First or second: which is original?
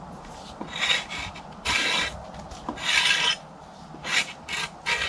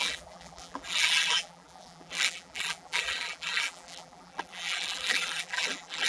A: first